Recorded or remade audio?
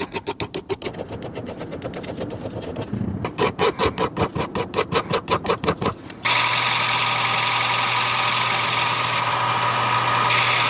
recorded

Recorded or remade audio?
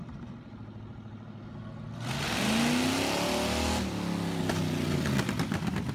recorded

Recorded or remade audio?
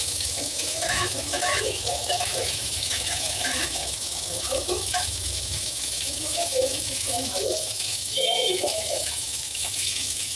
remade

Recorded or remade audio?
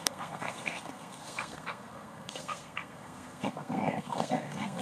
remade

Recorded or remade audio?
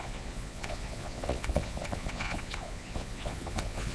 remade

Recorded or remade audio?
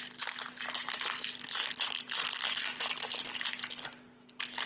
recorded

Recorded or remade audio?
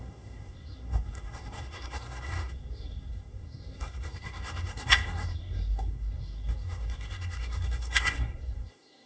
remade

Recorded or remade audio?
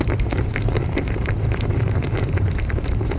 remade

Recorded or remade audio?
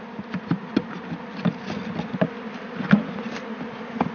recorded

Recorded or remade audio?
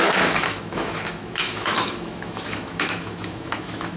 remade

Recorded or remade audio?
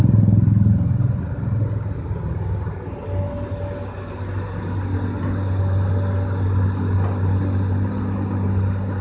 recorded